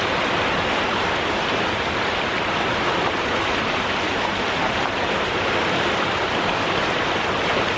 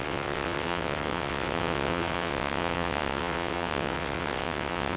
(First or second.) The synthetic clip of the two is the second